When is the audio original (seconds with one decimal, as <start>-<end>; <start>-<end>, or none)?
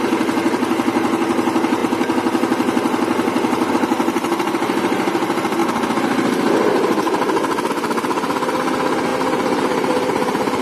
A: 0.0-9.1